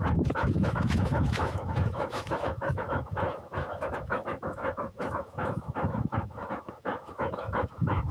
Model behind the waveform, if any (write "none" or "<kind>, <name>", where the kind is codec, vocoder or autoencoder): autoencoder, DAC-VAE